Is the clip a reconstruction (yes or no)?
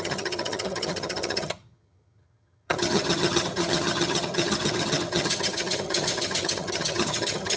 yes